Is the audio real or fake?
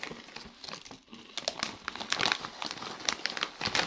real